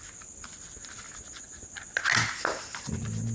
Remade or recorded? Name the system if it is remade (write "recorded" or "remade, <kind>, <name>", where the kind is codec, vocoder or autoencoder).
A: recorded